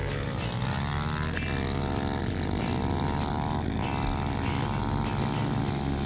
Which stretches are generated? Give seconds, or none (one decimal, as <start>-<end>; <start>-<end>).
none